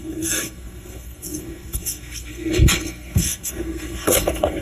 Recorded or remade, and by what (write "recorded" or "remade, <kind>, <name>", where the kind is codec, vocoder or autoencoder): remade, codec, SNAC